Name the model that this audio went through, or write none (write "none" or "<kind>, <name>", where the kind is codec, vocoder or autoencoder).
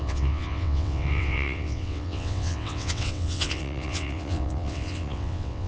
vocoder, WaveNeXt